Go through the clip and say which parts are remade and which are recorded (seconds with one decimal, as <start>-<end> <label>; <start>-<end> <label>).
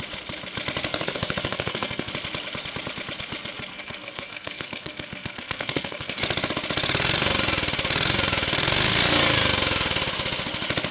0.0-0.9 recorded; 0.9-2.1 remade; 2.1-3.7 recorded; 3.7-6.2 remade; 6.2-10.9 recorded